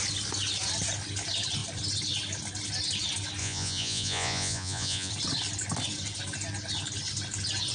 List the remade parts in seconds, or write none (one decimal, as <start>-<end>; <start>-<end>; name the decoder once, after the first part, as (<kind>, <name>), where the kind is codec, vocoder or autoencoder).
3.4-5.1 (vocoder, Vocos)